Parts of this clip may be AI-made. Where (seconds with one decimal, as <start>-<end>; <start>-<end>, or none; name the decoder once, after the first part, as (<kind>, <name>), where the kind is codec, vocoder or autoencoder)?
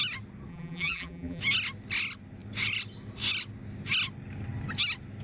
0.5-1.4 (vocoder, BigVGAN v2)